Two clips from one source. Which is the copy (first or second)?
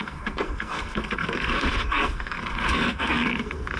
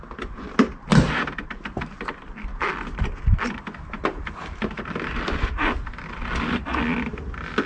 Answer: first